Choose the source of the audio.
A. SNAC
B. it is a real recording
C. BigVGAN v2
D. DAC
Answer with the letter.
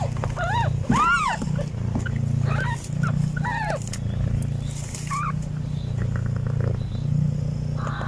B